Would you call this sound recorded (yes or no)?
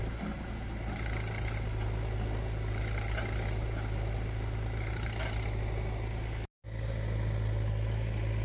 yes